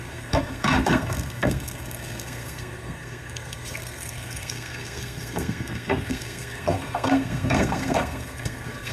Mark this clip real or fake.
fake